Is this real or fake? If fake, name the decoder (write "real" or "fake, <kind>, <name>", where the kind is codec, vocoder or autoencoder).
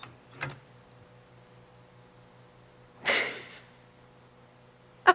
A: real